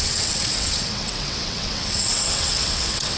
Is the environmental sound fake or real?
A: fake